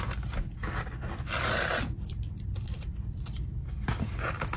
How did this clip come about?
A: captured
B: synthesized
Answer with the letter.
B